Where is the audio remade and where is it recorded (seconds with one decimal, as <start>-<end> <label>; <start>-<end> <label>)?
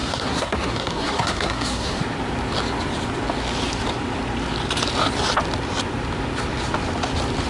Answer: 0.0-2.0 remade; 2.0-7.5 recorded